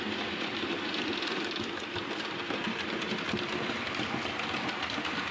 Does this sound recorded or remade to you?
remade